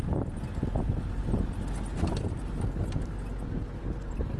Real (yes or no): yes